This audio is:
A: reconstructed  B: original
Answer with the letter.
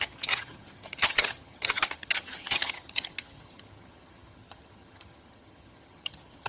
A